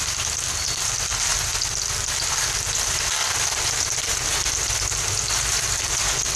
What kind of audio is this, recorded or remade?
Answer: recorded